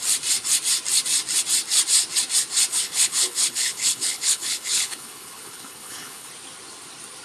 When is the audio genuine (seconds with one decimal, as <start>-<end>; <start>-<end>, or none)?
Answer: 0.0-2.7; 6.3-7.2